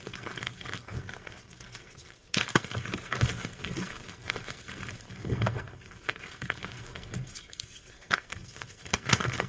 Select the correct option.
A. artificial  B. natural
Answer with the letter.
A